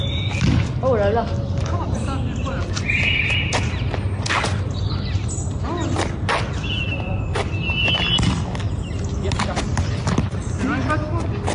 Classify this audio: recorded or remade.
recorded